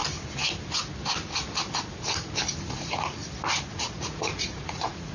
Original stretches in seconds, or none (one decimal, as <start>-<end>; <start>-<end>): 0.0-2.6; 3.2-4.0